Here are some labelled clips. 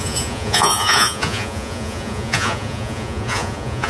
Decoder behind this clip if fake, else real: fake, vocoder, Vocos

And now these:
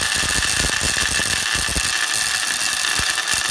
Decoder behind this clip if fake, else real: real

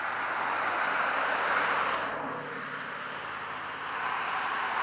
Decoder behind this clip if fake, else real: real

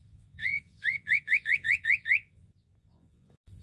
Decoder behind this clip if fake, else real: fake, vocoder, Vocos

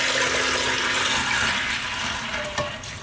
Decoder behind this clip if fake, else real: real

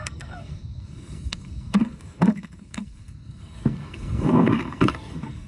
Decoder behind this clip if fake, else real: fake, codec, SNAC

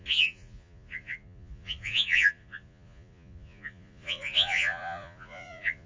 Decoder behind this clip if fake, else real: fake, vocoder, Vocos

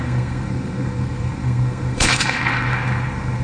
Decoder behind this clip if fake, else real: fake, codec, SNAC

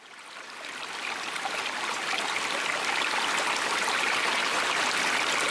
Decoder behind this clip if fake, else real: real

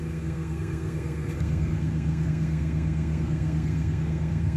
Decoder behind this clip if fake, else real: fake, codec, SNAC